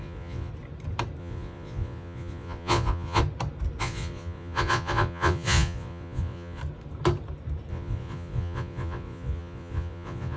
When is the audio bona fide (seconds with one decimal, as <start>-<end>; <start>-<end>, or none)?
0.5-1.2; 3.2-3.8; 6.6-7.7